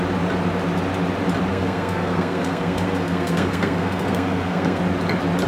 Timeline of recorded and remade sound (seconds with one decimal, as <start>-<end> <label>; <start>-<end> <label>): 0.0-1.5 recorded; 1.5-4.8 remade; 4.8-5.5 recorded